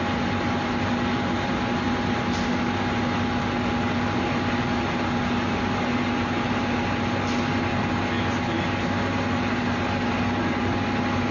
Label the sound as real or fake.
real